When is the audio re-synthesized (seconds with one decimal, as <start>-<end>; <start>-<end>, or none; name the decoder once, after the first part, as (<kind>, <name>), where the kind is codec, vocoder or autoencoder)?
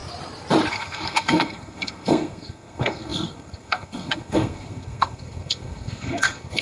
0.7-6.6 (codec, SNAC)